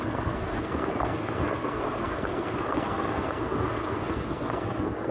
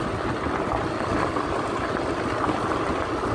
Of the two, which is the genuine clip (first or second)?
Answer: second